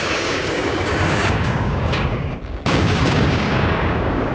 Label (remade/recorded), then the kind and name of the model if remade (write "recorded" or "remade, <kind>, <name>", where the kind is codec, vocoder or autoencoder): remade, codec, DAC